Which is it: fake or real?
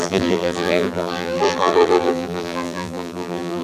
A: fake